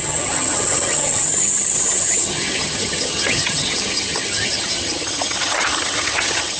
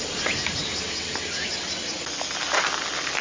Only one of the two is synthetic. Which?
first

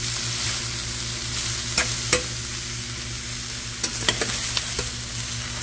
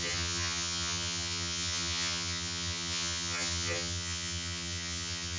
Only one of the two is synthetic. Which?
second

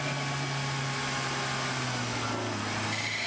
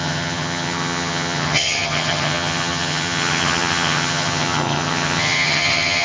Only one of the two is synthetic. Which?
second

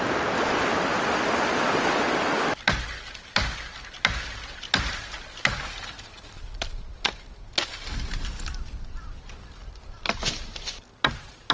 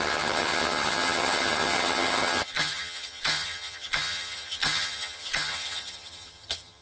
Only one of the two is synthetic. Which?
second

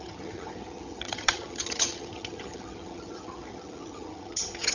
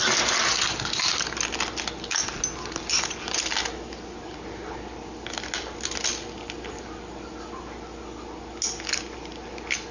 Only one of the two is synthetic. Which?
first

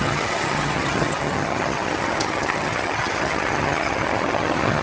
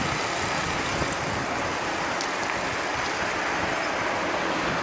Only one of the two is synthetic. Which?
first